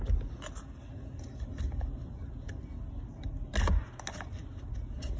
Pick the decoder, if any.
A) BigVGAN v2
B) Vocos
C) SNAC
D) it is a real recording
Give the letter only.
D